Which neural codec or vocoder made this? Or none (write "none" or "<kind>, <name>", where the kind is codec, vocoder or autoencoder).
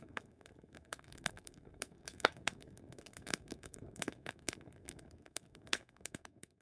codec, SNAC